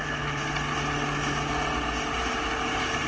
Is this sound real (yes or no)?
yes